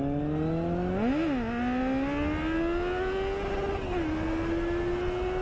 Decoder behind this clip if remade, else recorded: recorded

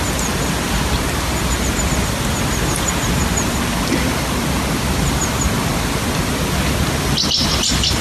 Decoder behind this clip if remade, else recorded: recorded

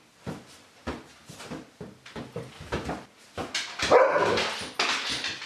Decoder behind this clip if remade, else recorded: recorded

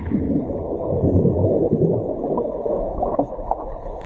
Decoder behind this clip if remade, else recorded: remade, codec, HILCodec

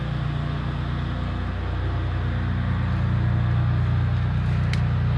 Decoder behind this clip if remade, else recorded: recorded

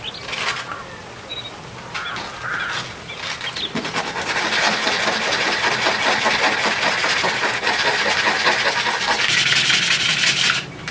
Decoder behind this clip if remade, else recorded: recorded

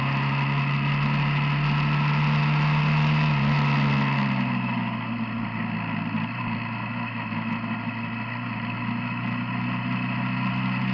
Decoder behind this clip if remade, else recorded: recorded